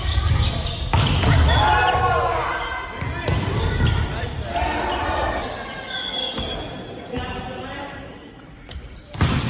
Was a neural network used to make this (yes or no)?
no